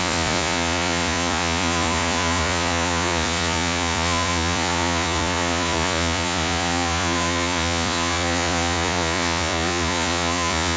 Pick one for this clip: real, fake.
fake